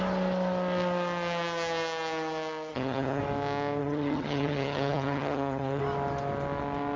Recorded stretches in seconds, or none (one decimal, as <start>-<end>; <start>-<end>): 0.0-2.7; 3.2-3.8; 5.8-7.0